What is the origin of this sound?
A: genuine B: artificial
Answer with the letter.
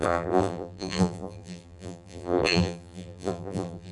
B